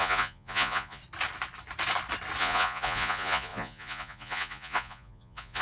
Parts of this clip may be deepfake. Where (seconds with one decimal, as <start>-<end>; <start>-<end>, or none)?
0.0-1.0; 2.4-5.6

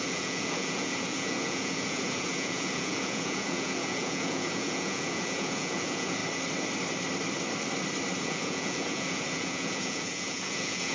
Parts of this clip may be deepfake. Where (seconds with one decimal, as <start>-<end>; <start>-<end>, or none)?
0.0-6.2; 8.2-10.9

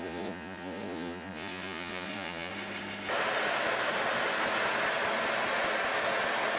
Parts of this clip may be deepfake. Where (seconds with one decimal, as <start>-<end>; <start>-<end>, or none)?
0.0-2.5

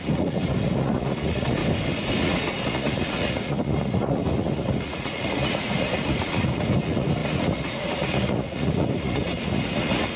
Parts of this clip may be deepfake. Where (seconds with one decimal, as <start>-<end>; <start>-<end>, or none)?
0.0-1.6; 2.2-10.2